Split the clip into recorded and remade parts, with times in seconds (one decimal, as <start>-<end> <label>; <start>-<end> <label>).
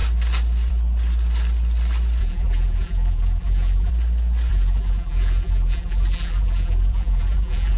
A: 0.0-2.2 recorded; 2.2-3.9 remade; 3.9-4.5 recorded; 4.5-7.8 remade